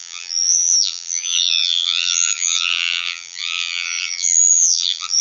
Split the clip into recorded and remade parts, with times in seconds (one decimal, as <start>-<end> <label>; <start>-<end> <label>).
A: 0.0-5.2 remade